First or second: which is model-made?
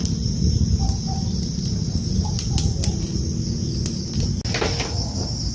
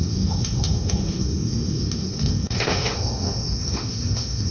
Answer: second